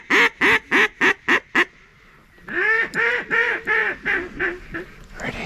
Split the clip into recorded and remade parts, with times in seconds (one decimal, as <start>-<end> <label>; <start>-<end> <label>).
0.0-5.5 recorded